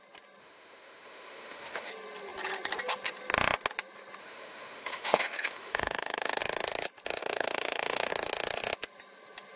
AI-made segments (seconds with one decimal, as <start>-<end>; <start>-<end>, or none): 0.4-1.9; 4.2-6.4; 7.2-8.1